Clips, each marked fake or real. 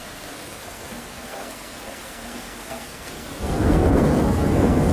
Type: fake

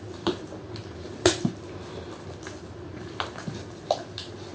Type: real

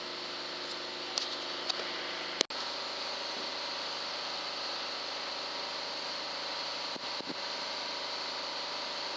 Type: real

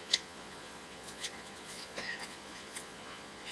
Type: fake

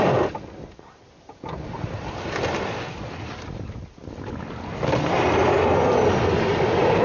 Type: real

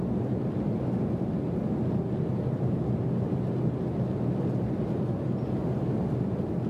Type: real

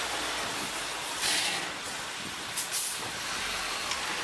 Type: real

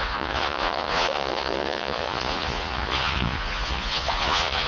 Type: fake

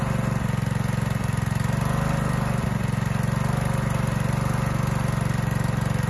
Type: real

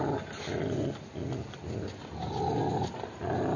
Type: real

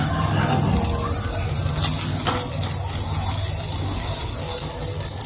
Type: real